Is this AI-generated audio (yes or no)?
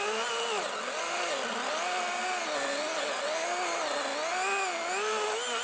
no